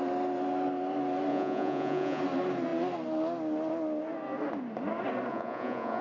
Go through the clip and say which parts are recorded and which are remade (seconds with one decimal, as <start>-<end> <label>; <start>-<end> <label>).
0.0-1.3 recorded; 1.3-2.2 remade; 2.2-5.3 recorded; 5.3-6.0 remade